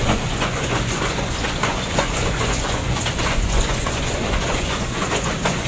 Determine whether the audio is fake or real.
fake